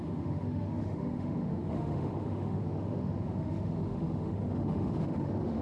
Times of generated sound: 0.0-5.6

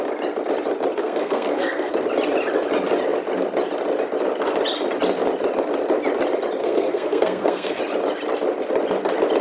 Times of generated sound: 1.0-1.9; 6.6-7.8

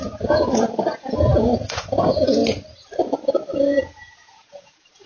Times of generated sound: 0.0-2.4; 3.8-5.1

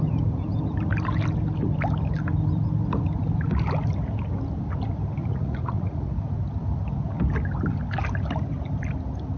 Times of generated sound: 5.2-6.1